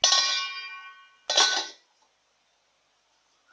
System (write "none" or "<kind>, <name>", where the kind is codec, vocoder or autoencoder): none